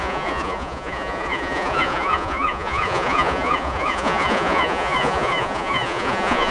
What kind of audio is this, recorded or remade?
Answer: remade